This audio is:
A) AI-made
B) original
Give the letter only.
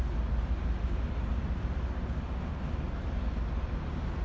B